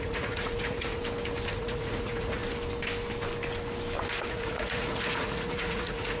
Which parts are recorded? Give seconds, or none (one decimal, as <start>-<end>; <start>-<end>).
1.0-1.5; 2.4-4.3